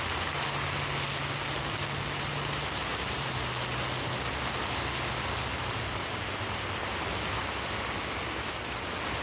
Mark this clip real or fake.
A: real